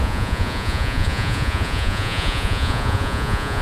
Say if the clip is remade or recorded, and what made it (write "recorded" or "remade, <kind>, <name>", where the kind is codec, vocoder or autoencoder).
remade, vocoder, Vocos